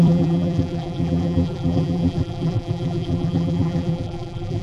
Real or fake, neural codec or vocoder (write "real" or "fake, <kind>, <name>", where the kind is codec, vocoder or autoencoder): fake, vocoder, BigVGAN v2